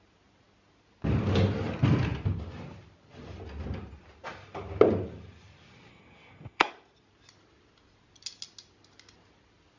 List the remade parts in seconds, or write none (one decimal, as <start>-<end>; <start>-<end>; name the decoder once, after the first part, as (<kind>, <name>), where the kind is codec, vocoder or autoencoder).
5.9-6.7 (codec, SNAC)